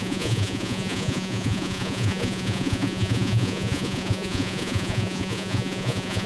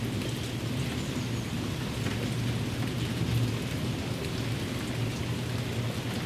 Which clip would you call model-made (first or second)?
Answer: first